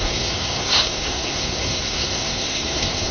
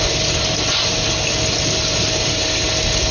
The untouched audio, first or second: second